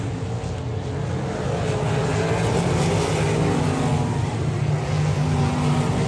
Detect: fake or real real